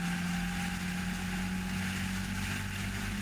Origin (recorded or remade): recorded